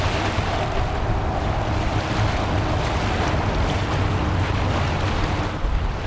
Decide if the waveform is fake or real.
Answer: real